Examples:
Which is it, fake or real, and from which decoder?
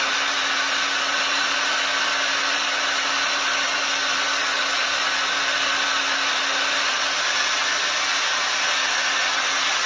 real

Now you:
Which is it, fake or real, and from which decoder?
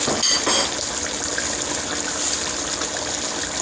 real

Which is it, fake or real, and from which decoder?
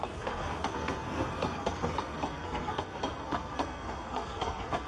fake, codec, SNAC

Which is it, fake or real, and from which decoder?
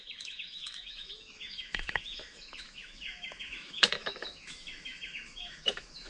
fake, autoencoder, DAC-VAE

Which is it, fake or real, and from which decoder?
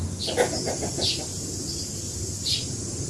real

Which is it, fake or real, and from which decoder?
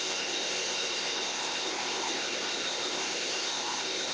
fake, codec, ZipCodec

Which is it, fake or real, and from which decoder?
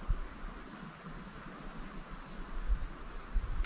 fake, vocoder, BigVGAN v2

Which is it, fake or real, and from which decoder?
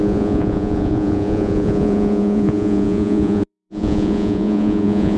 fake, vocoder, Vocos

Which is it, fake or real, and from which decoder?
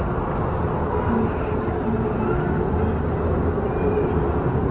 real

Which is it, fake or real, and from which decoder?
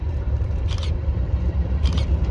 fake, vocoder, BigVGAN v2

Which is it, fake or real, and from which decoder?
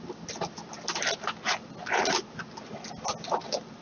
real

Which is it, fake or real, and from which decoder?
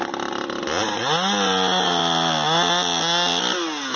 real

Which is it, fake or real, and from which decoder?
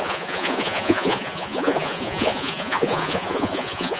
fake, vocoder, Vocos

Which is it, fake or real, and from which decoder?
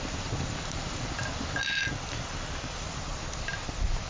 real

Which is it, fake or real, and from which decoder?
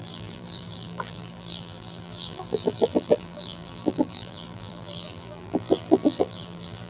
fake, vocoder, BigVGAN v2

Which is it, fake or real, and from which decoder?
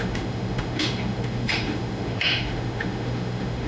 fake, autoencoder, DAC-VAE